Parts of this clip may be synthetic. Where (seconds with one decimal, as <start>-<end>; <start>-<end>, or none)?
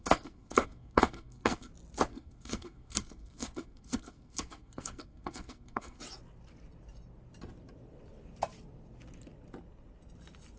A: 0.0-1.7; 2.1-6.0